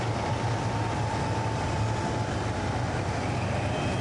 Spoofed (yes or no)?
no